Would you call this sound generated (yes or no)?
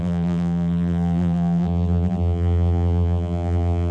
yes